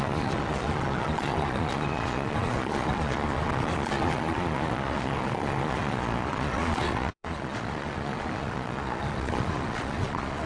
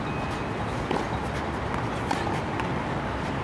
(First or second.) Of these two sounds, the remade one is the first